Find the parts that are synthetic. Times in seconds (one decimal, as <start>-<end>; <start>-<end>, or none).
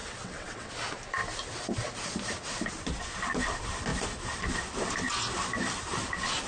0.0-0.7